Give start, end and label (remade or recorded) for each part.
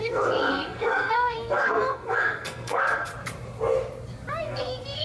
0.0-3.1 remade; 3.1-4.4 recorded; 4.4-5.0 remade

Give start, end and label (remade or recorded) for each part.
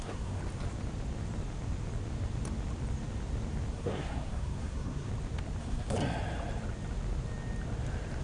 0.0-0.4 remade; 0.4-3.7 recorded; 3.7-5.1 remade; 5.1-5.6 recorded; 5.6-6.0 remade; 6.0-8.2 recorded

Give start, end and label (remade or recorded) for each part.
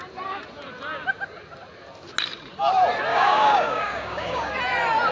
0.0-3.1 recorded; 3.1-4.5 remade; 4.5-5.1 recorded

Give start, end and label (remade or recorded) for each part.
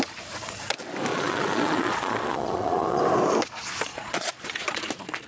0.0-1.1 recorded; 1.1-3.0 remade; 3.0-3.9 recorded; 3.9-4.8 remade; 4.8-5.3 recorded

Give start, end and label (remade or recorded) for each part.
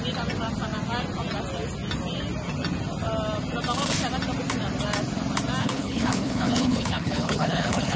0.0-5.6 recorded; 5.6-8.0 remade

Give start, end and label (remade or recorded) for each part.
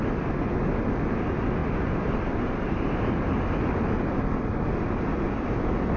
0.0-6.0 recorded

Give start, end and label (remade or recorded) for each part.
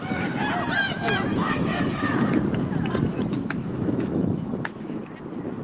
0.0-0.8 recorded; 0.8-2.1 remade; 2.1-3.1 recorded; 3.1-5.0 remade; 5.0-5.6 recorded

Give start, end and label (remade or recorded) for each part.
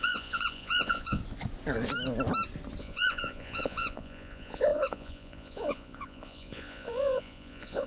0.0-1.2 remade; 1.2-2.8 recorded; 2.8-7.9 remade